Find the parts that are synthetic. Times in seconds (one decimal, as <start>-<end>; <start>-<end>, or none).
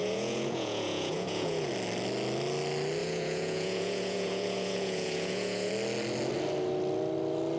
0.0-1.7; 3.0-5.7